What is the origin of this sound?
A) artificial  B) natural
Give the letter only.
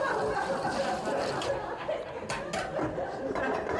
B